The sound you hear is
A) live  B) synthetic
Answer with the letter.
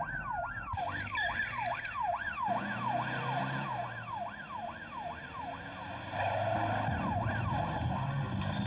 A